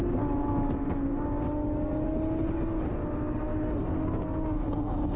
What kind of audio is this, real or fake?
real